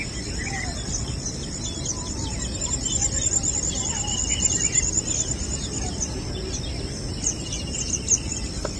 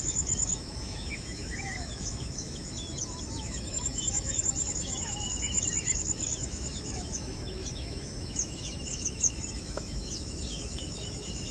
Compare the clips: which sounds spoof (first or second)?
second